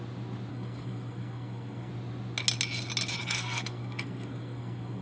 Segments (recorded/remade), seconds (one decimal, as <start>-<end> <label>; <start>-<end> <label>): 0.0-0.5 recorded; 0.5-1.9 remade; 1.9-3.2 recorded; 3.2-5.0 remade